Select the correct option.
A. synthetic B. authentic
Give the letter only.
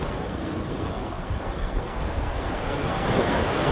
A